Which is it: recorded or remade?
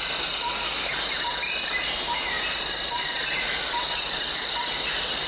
recorded